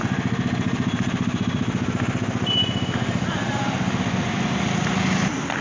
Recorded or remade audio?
recorded